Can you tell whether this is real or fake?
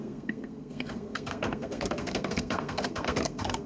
fake